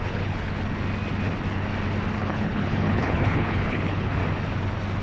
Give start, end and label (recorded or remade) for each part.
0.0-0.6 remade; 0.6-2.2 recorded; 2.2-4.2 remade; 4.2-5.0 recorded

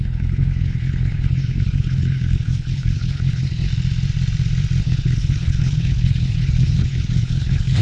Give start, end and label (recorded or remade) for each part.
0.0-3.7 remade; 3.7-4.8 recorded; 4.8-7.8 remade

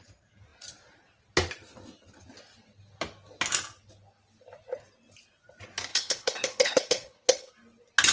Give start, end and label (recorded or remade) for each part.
0.0-5.9 recorded; 5.9-7.5 remade; 7.5-8.1 recorded

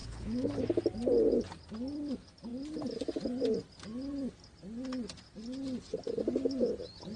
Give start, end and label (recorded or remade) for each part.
0.0-0.6 remade; 0.6-7.2 recorded

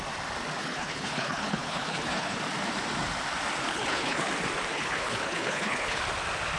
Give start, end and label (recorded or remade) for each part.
0.0-0.6 recorded; 0.6-2.4 remade; 2.4-3.7 recorded; 3.7-4.3 remade; 4.3-4.7 recorded; 4.7-6.0 remade; 6.0-6.6 recorded

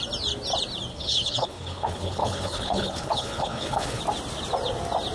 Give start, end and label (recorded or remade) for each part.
0.0-0.9 recorded; 0.9-4.0 remade; 4.0-5.1 recorded

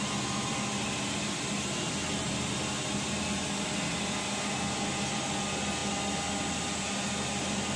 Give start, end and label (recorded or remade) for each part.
0.0-7.8 recorded